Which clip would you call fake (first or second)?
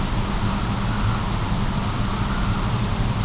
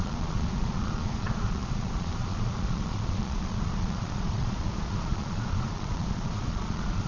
second